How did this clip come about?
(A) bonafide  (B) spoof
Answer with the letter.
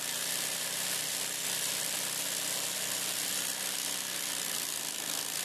B